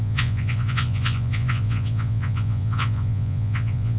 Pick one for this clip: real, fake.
fake